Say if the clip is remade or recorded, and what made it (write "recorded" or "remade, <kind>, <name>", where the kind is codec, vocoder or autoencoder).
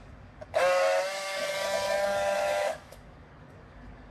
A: remade, codec, DAC